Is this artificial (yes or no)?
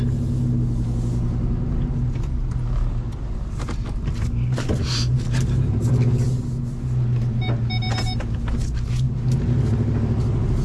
no